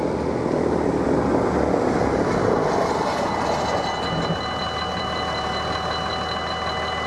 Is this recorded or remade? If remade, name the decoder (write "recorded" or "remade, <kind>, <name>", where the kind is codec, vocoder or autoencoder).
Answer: recorded